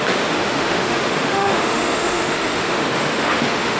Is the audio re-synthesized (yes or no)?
yes